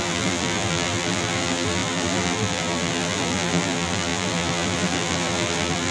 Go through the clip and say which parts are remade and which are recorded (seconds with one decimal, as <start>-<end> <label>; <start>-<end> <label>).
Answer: 0.0-5.9 remade